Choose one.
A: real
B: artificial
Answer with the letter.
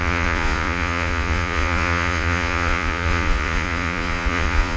B